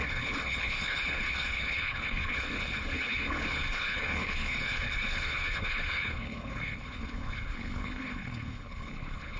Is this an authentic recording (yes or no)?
no